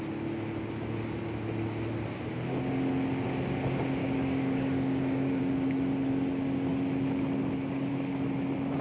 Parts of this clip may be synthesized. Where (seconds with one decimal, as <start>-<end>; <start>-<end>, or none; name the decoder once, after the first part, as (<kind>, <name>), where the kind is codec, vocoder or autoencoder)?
4.0-5.4 (codec, DAC)